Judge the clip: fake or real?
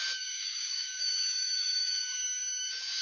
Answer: fake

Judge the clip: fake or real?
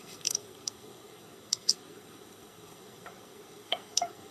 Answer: fake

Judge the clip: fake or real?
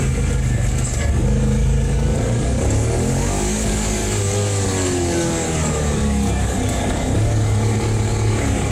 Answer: fake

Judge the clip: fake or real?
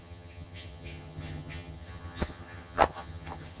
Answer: fake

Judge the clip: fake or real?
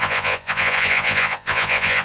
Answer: fake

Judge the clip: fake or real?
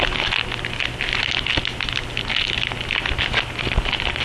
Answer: real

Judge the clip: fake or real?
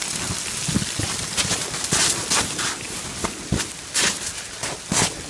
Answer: real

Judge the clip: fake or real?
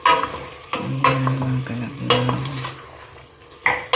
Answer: real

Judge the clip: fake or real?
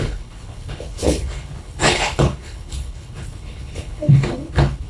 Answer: fake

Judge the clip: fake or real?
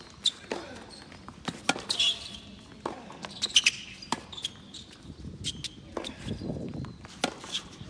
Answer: real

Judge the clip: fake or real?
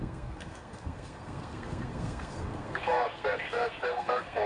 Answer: fake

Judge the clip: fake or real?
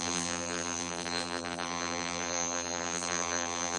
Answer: fake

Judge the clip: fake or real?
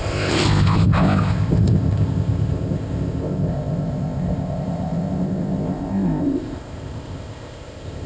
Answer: fake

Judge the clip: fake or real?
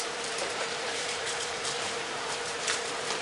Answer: fake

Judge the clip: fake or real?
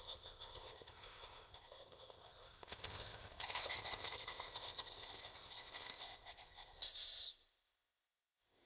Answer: fake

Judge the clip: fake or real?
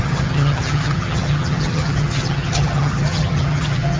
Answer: fake